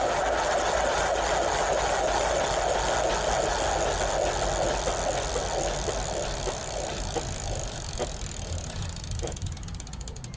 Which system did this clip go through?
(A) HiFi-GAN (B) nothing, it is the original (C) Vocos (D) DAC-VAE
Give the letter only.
B